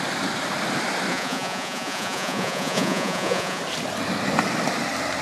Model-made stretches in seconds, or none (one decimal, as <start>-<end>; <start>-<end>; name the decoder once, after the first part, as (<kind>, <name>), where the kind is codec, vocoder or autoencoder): 1.1-3.6 (vocoder, Vocos)